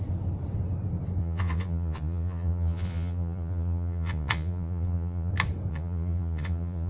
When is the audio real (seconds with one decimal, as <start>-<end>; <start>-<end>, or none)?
0.0-1.2; 5.3-5.7